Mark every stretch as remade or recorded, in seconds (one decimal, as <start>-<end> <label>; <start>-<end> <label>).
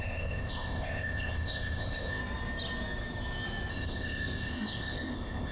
0.0-2.2 remade; 2.2-3.7 recorded; 3.7-5.5 remade